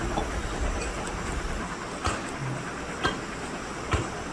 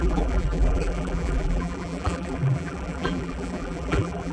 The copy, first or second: second